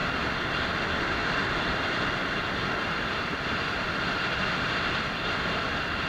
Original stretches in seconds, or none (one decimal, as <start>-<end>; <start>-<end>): 0.0-1.2; 4.9-6.1

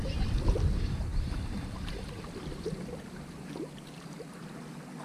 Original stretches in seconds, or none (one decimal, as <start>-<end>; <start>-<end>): 0.0-5.0

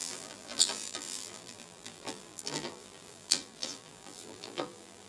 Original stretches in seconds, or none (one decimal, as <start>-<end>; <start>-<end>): none

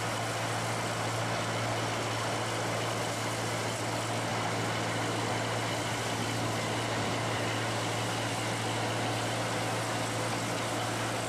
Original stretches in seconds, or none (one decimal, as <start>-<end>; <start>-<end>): 0.0-11.3

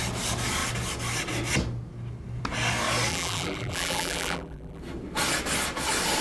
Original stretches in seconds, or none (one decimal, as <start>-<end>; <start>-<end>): 0.0-3.1; 4.8-6.2

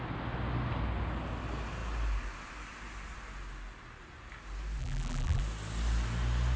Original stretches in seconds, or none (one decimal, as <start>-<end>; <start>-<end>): 0.0-4.8; 5.4-6.6

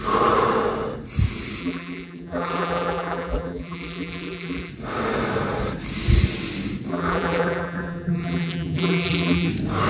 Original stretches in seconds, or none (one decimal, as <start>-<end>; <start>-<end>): 0.0-1.6; 4.7-6.9; 9.5-9.9